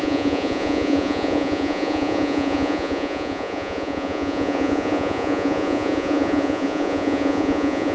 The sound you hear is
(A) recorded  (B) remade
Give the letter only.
B